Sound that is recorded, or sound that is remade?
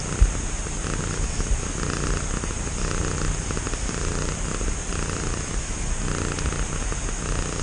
recorded